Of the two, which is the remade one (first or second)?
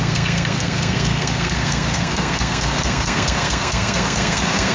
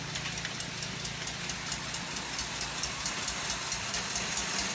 first